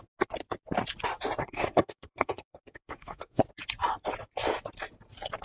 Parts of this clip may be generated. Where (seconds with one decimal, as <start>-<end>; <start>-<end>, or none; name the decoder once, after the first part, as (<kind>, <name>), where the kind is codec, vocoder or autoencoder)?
1.4-3.4 (codec, SNAC)